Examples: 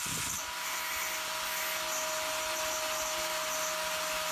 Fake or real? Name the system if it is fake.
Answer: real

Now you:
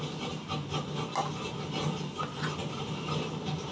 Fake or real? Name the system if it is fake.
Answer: real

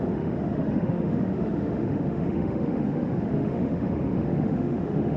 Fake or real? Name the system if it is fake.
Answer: fake, autoencoder, DAC-VAE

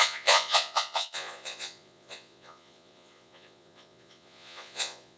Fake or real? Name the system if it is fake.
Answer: fake, vocoder, Vocos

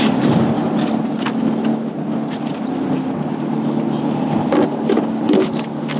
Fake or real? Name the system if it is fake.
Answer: real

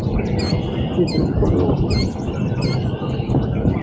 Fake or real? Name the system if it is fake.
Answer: real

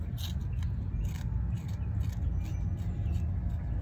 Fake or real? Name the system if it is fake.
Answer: real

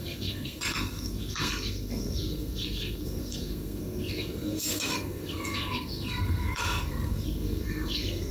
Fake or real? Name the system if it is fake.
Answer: fake, codec, SNAC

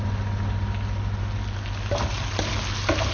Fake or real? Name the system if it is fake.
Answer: real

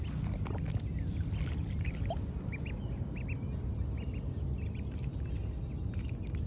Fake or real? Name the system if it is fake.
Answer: real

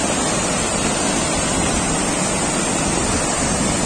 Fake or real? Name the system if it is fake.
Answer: real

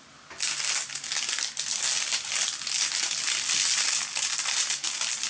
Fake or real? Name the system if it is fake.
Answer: real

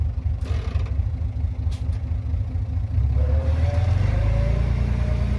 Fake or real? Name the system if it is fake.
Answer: real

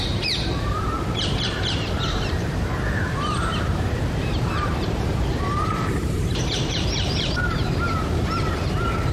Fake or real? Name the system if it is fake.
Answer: fake, vocoder, BigVGAN v2